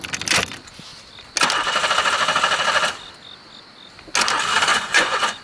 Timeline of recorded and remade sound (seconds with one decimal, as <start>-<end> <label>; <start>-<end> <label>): 0.0-4.7 recorded; 4.7-5.4 remade